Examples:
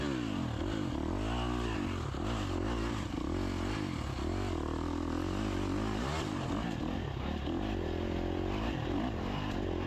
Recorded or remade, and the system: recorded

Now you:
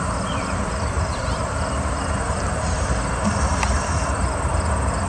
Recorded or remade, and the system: remade, vocoder, BigVGAN v2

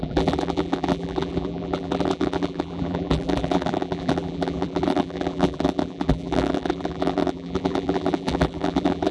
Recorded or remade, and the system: remade, vocoder, BigVGAN v2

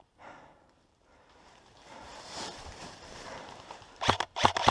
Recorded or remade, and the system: remade, vocoder, BigVGAN v2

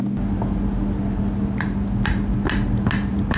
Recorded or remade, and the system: recorded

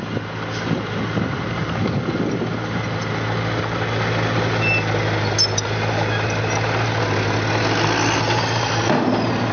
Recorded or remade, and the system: recorded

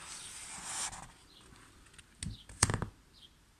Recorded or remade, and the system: recorded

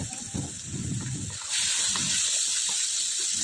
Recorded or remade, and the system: recorded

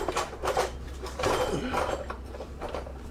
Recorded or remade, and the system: remade, vocoder, BigVGAN v2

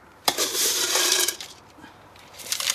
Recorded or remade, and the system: remade, vocoder, BigVGAN v2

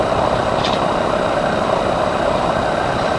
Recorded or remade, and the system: remade, vocoder, BigVGAN v2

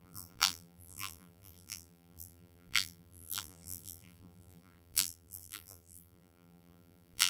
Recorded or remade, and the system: remade, vocoder, BigVGAN v2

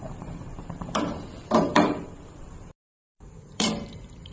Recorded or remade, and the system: remade, vocoder, BigVGAN v2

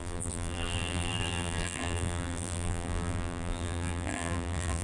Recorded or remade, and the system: remade, vocoder, BigVGAN v2